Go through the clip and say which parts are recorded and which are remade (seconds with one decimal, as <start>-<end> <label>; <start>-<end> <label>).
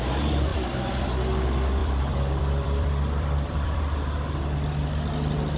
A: 0.0-0.5 recorded; 0.5-1.1 remade; 1.1-1.8 recorded; 1.8-3.8 remade; 3.8-5.6 recorded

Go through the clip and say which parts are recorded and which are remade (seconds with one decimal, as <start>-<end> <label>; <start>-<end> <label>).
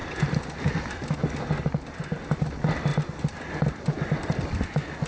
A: 0.0-5.1 recorded